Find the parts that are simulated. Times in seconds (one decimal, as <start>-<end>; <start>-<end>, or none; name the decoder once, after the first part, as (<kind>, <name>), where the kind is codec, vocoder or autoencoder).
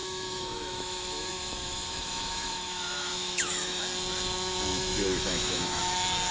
0.0-3.8 (autoencoder, DAC-VAE); 4.7-5.8